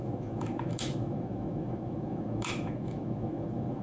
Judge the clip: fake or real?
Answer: fake